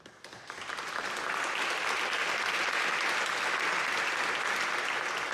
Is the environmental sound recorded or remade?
recorded